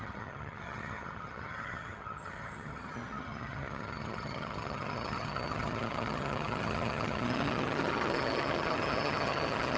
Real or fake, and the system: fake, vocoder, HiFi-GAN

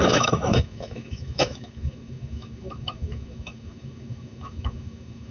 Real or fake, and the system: fake, autoencoder, DAC-VAE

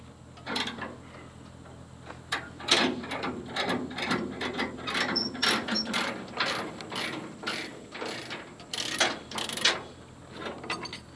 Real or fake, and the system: real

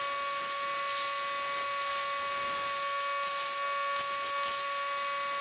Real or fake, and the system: real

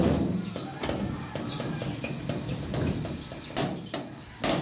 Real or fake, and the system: real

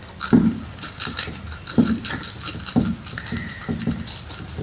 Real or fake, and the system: real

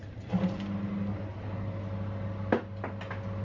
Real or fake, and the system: real